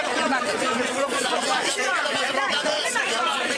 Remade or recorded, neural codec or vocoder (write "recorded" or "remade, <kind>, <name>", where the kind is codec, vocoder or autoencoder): remade, vocoder, Vocos